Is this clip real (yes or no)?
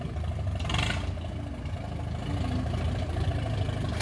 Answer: yes